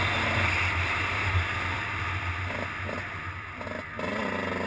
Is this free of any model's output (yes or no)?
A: yes